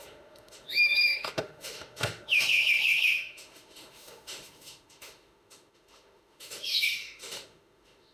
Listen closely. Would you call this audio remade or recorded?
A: remade